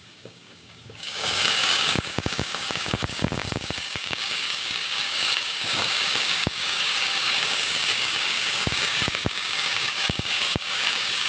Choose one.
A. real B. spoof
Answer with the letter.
B